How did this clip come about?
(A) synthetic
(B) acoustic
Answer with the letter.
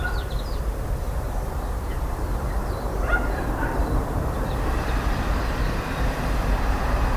A